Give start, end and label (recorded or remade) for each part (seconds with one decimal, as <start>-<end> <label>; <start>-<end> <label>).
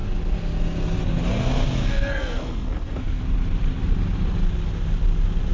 0.0-1.8 recorded; 1.8-3.2 remade; 3.2-5.5 recorded